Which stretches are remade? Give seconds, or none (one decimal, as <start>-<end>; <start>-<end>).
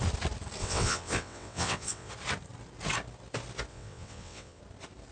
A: 0.6-2.1; 3.7-4.6